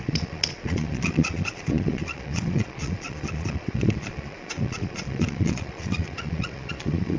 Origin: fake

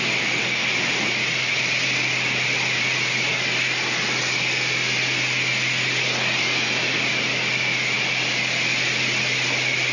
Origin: real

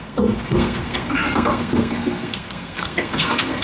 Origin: fake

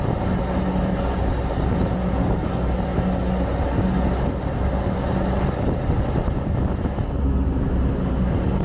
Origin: real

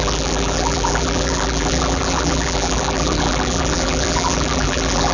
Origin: fake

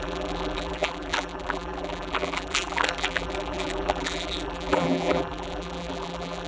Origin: fake